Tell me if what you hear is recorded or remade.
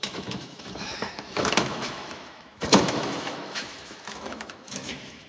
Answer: remade